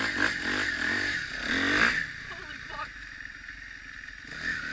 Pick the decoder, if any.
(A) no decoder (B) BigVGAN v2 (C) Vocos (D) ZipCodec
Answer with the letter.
A